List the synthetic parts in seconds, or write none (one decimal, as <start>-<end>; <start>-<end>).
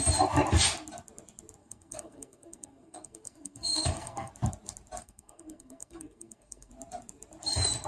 1.6-4.3; 5.0-6.7